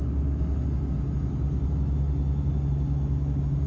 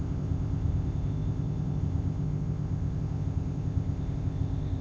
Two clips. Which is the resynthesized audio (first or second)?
second